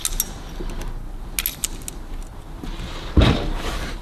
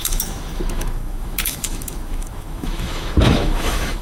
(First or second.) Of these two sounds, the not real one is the second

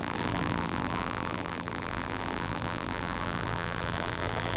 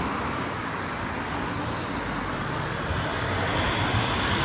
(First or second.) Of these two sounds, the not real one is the first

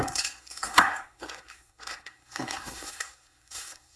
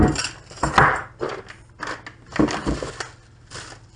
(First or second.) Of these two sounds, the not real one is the first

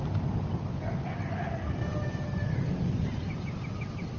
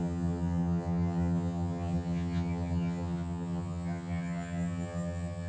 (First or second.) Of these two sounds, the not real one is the second